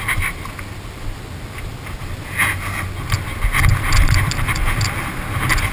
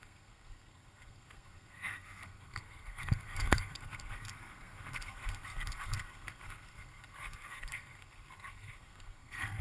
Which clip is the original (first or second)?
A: first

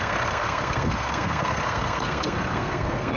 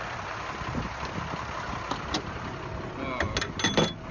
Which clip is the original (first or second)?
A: second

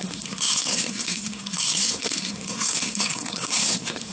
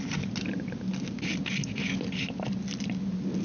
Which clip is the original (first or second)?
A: second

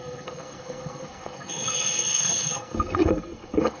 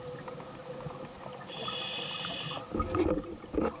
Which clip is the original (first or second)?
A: second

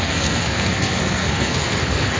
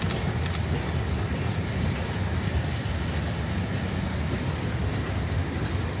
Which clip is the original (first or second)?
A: second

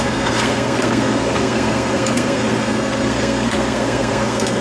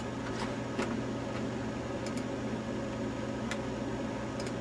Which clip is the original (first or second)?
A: second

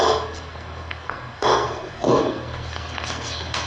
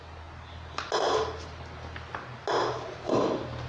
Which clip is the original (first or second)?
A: second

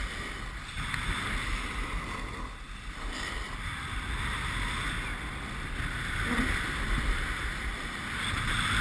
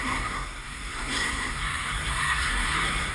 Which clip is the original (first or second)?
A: first